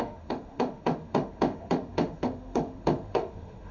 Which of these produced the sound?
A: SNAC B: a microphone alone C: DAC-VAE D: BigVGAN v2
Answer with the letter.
C